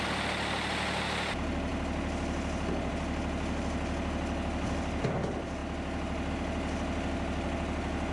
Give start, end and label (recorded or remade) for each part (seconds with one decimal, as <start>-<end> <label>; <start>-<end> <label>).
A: 0.0-8.1 recorded